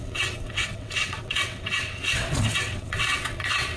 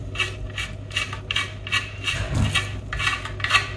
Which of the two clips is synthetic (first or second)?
first